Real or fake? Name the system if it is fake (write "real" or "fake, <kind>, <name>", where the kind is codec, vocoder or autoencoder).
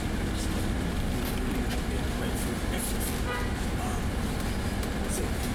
fake, vocoder, BigVGAN v2